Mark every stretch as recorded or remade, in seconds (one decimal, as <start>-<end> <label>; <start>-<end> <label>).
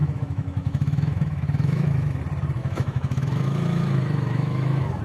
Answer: 0.0-2.2 remade; 2.2-2.6 recorded; 2.6-5.0 remade